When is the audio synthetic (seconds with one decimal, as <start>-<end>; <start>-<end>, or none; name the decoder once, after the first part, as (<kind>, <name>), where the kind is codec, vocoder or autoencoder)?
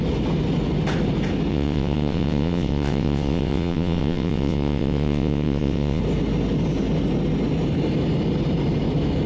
1.5-6.0 (vocoder, WaveNeXt)